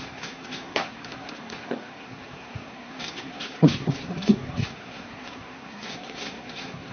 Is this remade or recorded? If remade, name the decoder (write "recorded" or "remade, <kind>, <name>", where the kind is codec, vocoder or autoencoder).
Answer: remade, codec, SNAC